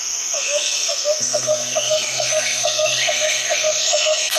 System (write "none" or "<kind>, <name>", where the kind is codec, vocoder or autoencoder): codec, SNAC